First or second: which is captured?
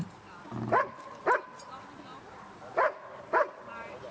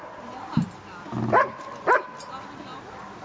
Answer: second